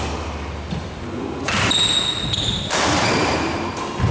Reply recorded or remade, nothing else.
recorded